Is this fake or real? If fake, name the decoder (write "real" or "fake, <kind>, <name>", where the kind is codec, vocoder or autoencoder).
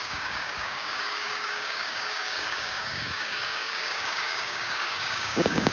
fake, codec, DAC